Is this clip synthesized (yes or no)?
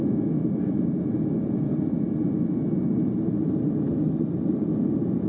no